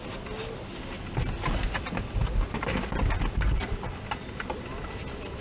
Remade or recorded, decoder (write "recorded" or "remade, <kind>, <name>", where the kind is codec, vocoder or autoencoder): recorded